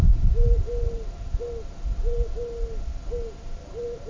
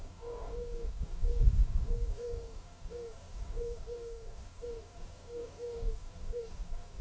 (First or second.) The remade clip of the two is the second